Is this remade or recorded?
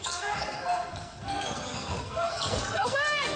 remade